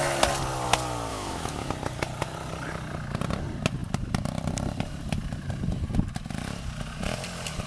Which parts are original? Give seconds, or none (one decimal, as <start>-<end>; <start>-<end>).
0.0-1.1; 1.7-7.7